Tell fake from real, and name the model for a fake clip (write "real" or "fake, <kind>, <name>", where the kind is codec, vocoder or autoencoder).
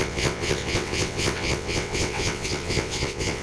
fake, vocoder, WaveNeXt